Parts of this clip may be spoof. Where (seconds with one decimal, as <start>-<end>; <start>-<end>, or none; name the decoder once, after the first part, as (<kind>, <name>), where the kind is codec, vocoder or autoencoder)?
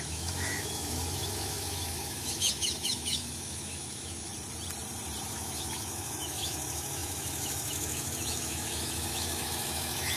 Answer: 0.0-4.3 (autoencoder, DAC-VAE); 5.3-10.2